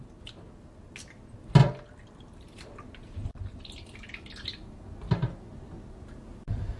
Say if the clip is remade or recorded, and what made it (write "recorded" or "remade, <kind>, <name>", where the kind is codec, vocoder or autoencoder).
recorded